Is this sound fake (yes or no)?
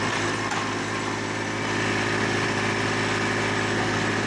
no